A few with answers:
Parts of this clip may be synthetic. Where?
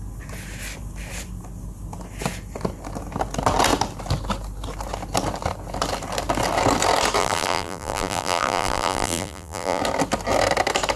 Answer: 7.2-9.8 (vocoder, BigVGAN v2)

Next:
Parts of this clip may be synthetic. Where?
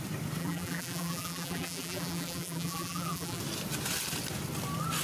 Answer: 0.4-3.4 (vocoder, BigVGAN v2)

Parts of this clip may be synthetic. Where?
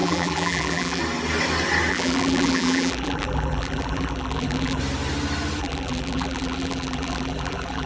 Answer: 0.0-1.0 (vocoder, BigVGAN v2); 1.9-4.8; 5.6-7.9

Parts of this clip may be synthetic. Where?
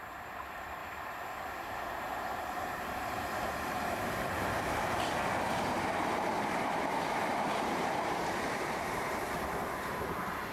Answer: 0.0-0.8 (vocoder, BigVGAN v2); 1.7-10.5